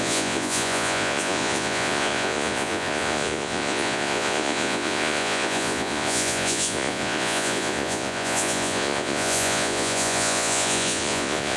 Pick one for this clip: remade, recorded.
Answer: remade